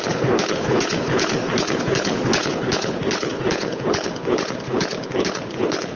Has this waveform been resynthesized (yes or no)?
yes